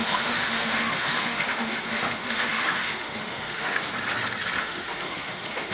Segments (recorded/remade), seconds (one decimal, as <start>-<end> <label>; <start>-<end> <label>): 0.0-3.9 remade; 3.9-4.6 recorded; 4.6-5.7 remade